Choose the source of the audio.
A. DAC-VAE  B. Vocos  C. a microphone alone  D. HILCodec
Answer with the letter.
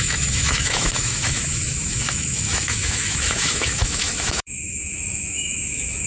A